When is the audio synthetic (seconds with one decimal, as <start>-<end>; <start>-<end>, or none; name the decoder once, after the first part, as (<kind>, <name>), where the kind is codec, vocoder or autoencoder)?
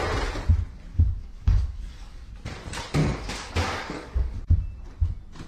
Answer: 0.9-2.3 (codec, DAC); 3.0-4.4